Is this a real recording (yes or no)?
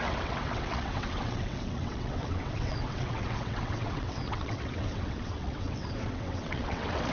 no